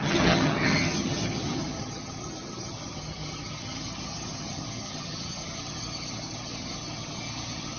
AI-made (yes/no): yes